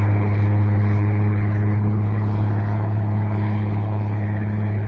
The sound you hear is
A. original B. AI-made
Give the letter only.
B